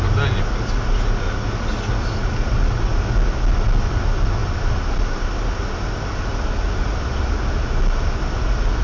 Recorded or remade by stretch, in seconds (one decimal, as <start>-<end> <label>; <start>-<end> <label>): 0.0-8.8 recorded